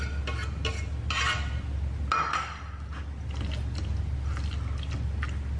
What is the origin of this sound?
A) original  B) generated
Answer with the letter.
A